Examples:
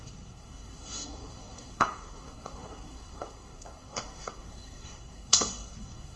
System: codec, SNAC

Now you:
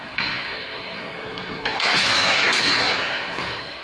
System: codec, SNAC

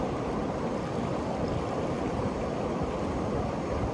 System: none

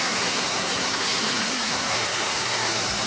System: codec, SNAC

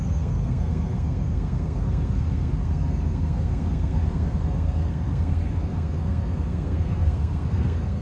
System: codec, SNAC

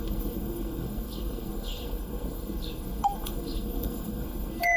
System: codec, SNAC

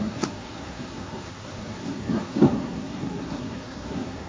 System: codec, SNAC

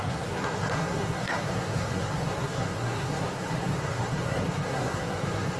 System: codec, SNAC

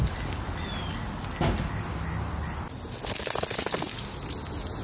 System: none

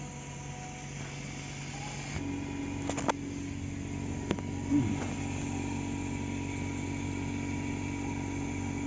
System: none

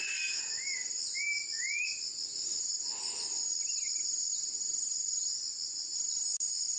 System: none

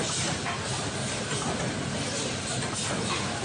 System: none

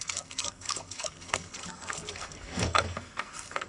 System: codec, SNAC